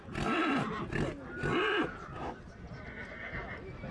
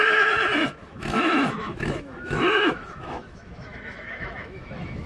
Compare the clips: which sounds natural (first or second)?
first